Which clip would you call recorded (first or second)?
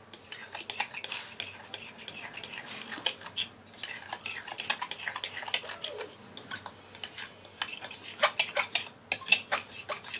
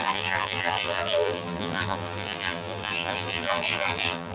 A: first